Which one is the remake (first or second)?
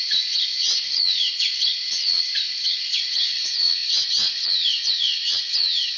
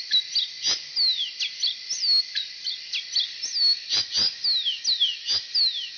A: first